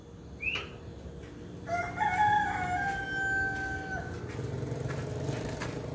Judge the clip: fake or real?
real